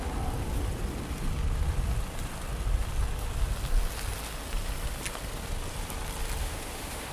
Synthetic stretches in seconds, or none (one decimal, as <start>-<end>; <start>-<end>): 6.4-7.1

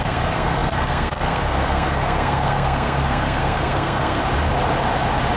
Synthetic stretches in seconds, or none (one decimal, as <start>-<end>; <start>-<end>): 0.0-4.2

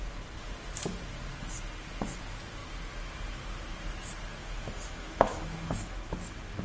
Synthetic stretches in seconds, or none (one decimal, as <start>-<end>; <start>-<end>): 4.4-6.1

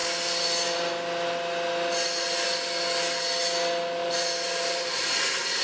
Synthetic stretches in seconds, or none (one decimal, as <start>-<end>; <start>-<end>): 0.0-0.9; 4.0-5.6

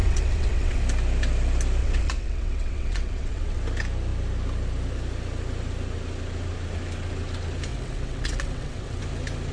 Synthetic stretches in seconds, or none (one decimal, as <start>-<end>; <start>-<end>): 0.0-0.8; 1.8-3.6; 7.7-9.0